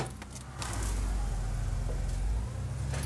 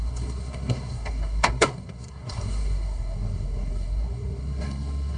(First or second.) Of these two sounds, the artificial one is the second